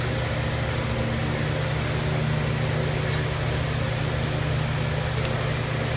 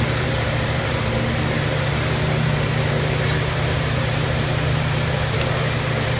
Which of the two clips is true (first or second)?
first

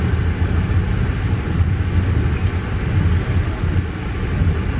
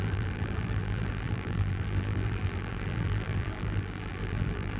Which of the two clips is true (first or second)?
first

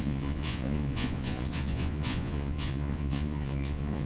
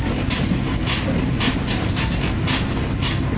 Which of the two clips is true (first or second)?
second